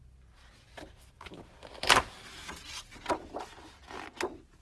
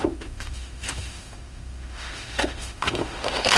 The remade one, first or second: second